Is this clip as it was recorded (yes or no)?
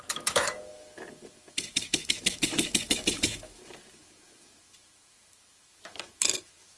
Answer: no